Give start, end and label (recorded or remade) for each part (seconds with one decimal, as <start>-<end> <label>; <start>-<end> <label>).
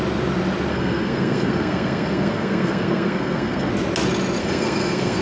0.0-0.7 recorded; 0.7-3.7 remade; 3.7-4.4 recorded; 4.4-5.2 remade